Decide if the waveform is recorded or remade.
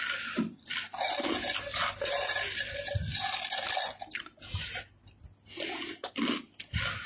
recorded